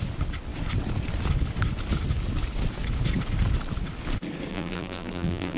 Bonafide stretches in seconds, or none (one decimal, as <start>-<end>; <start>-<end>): 0.0-4.5